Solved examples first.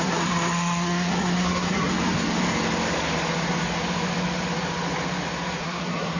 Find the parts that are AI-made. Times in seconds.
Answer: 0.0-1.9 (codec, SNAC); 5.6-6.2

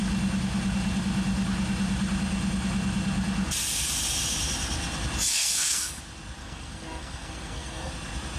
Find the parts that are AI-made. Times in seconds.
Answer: 5.3-6.0 (codec, SNAC); 6.4-7.9

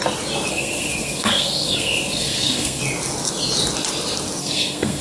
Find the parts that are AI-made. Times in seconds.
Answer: 0.5-2.8 (codec, SNAC); 4.4-5.0

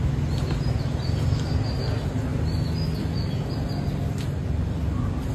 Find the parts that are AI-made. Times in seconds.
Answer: none

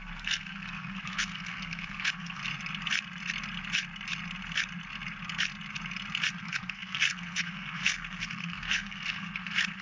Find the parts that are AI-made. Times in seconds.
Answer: 0.0-2.4 (codec, SNAC); 6.3-9.8

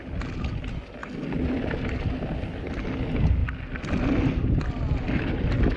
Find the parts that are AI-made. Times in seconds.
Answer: none

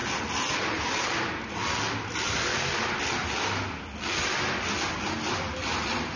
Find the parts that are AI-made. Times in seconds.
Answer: none